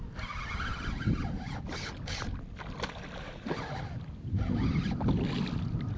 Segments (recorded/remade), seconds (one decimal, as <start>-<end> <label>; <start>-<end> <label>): 0.0-6.0 recorded

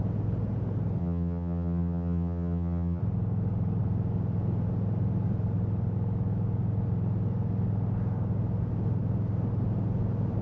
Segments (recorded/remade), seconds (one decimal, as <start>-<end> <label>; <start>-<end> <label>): 0.0-1.0 recorded; 1.0-3.0 remade; 3.0-10.4 recorded